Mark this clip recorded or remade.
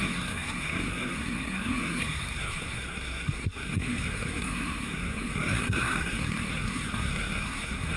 remade